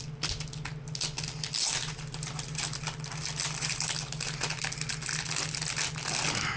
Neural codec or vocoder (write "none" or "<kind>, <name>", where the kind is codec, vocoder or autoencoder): none